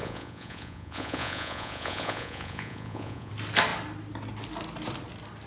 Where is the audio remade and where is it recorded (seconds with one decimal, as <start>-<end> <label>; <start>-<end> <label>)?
0.0-3.3 remade; 3.3-5.5 recorded